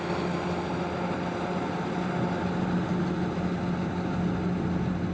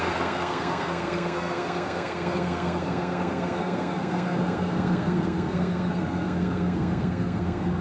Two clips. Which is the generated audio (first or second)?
second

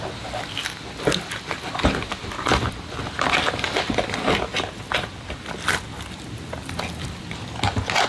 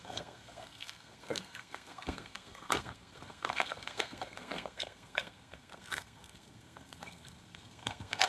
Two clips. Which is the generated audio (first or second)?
second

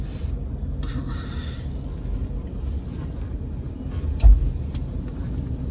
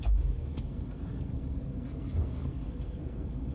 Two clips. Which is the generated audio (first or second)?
second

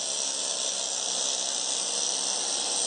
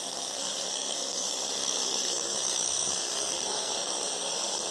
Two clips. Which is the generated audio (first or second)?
second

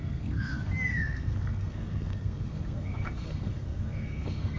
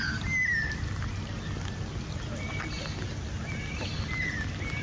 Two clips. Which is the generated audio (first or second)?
first